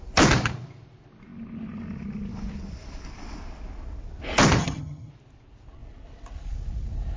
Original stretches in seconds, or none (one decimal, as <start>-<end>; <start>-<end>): 0.0-4.6; 5.1-7.2